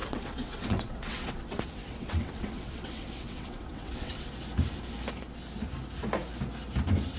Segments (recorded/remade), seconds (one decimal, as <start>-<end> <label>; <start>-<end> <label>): 0.0-4.3 remade; 4.3-7.2 recorded